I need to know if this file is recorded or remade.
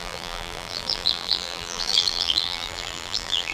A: remade